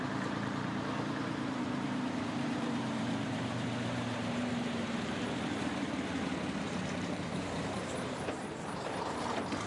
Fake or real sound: fake